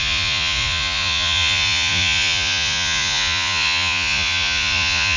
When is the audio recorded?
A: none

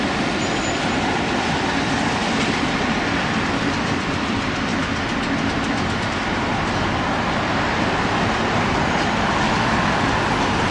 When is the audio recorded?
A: 4.7-8.9